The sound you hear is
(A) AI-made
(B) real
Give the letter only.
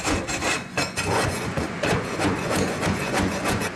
A